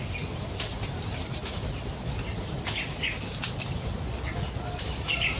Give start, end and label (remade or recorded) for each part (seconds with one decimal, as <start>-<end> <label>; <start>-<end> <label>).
0.0-5.4 recorded